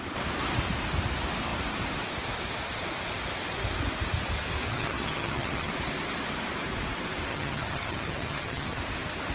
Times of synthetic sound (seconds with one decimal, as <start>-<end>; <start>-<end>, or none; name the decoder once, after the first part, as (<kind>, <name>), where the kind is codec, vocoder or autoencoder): 4.7-5.7 (vocoder, HiFi-GAN); 7.3-8.8